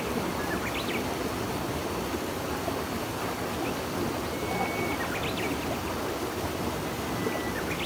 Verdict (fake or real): real